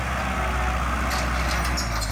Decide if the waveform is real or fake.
real